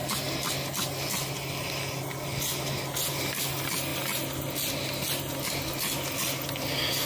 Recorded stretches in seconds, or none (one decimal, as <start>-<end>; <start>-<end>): 0.0-7.1

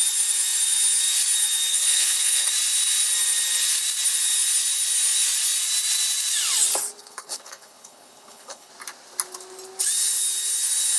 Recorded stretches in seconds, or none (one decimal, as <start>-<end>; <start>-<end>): 0.0-1.7; 2.5-7.0; 8.7-11.0

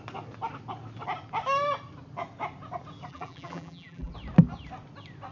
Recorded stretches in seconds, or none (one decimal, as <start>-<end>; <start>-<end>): 0.0-3.1; 4.1-5.3

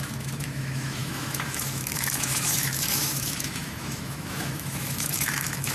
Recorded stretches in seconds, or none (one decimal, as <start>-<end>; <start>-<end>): none

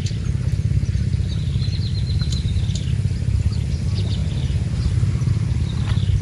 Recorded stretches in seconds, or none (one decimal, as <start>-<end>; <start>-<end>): 1.1-3.2; 4.2-5.3

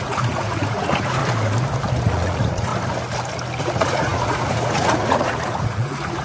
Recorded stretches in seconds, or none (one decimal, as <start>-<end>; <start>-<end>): 1.2-2.1; 2.7-3.6

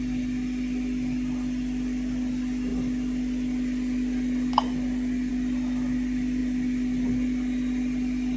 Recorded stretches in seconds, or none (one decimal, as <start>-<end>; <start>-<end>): 0.0-8.4

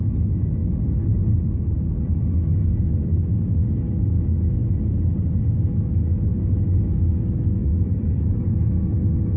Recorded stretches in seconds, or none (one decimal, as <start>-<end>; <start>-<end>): 0.0-1.1; 1.8-4.6; 5.6-6.3; 6.8-7.6; 8.9-9.4